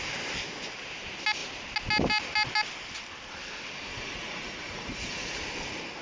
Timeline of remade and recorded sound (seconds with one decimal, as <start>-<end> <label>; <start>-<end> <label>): 0.0-3.9 recorded; 3.9-5.4 remade; 5.4-6.0 recorded